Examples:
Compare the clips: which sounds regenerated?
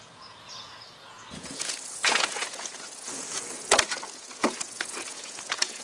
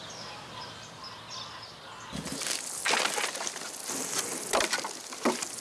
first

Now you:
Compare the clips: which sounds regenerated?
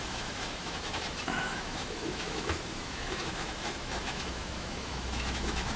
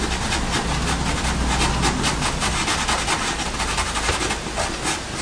first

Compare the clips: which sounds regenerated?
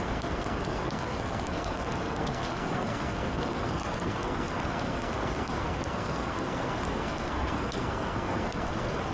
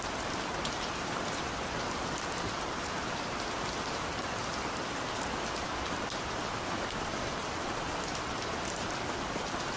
first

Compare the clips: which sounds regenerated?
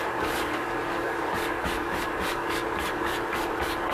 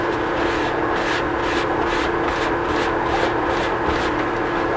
first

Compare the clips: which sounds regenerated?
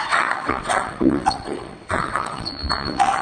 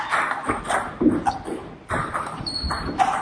first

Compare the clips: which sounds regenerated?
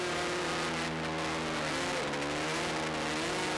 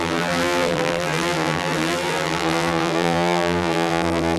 second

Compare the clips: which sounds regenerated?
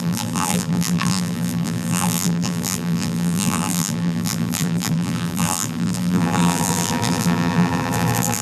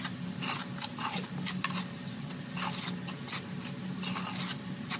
first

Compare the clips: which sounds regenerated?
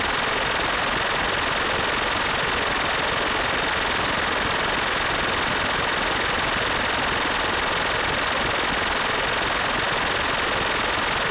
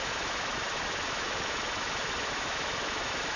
second